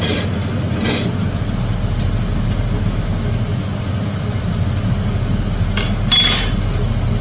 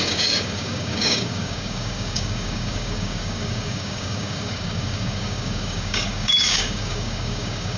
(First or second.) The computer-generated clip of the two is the second